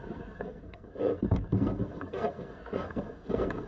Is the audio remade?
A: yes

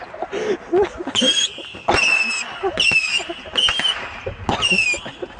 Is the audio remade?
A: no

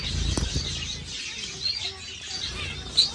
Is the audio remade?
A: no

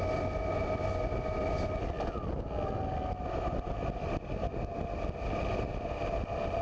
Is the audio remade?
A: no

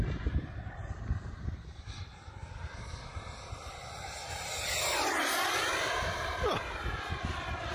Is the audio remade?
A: no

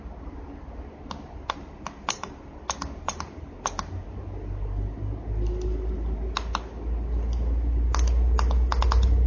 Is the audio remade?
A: no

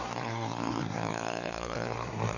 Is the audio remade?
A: yes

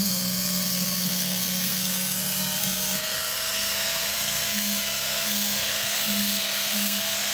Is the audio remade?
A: yes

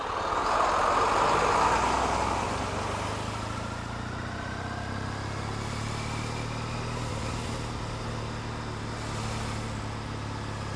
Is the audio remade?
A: no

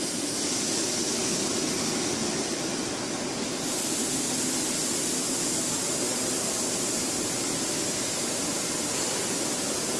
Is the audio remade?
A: no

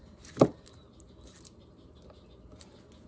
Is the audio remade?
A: no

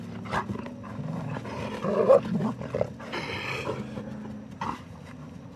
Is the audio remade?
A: no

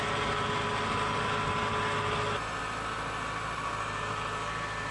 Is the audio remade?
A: no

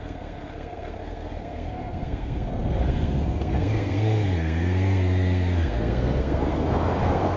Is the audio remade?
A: yes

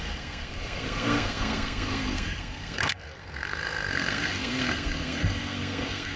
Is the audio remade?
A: yes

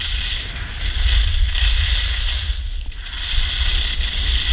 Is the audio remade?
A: no